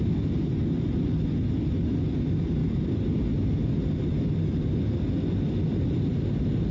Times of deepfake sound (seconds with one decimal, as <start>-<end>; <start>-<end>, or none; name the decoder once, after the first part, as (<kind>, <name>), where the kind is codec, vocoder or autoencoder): none